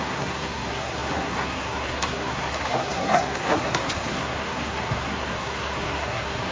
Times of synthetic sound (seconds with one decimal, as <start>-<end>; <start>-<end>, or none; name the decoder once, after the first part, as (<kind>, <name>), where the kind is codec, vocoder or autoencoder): 0.0-6.5 (codec, SNAC)